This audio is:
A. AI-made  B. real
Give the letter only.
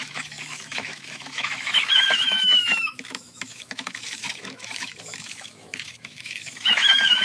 A